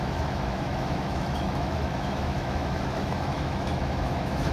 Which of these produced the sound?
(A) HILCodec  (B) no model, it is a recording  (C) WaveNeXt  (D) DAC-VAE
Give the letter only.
D